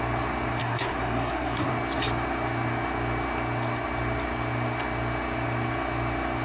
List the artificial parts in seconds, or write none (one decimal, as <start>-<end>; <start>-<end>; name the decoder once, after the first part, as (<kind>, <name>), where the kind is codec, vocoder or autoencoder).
0.6-1.7 (codec, SNAC)